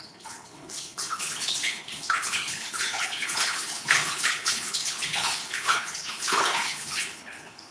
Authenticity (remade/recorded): remade